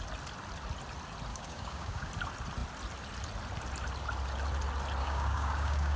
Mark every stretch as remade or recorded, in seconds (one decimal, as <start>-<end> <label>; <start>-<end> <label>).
0.0-1.3 recorded; 1.3-2.1 remade; 2.1-5.0 recorded; 5.0-6.0 remade